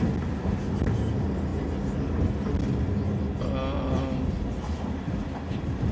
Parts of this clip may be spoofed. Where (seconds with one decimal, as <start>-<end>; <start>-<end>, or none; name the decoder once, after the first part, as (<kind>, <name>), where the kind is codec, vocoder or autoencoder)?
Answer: none